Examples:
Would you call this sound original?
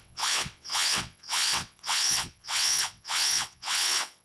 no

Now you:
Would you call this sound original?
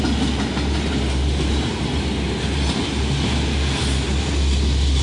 yes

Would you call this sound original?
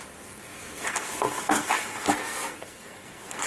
no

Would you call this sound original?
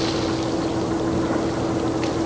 yes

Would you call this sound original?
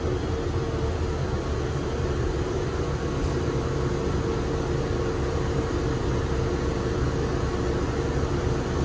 yes